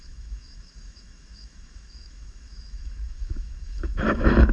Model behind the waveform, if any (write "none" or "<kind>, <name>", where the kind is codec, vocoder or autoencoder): autoencoder, DAC-VAE